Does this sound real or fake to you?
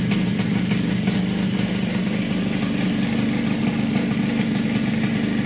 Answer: real